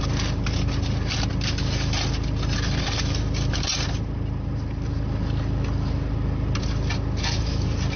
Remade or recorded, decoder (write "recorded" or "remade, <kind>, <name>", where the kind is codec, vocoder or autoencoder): recorded